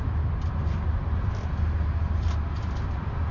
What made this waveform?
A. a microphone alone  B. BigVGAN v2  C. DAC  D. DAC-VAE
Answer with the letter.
A